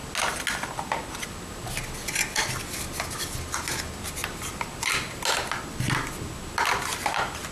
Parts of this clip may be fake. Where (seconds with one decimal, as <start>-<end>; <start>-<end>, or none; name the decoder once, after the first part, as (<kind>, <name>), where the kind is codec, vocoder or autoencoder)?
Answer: none